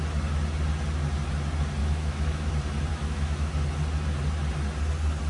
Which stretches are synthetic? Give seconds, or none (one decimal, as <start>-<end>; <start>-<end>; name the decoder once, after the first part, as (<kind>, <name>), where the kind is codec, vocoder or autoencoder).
1.8-2.5 (autoencoder, DAC-VAE); 2.9-3.5